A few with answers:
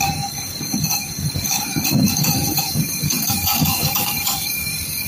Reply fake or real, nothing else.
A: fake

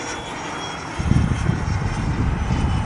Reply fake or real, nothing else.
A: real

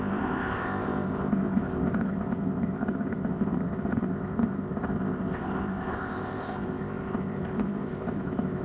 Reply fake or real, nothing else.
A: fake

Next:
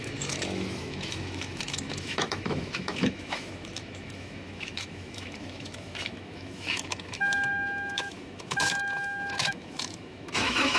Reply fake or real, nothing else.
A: fake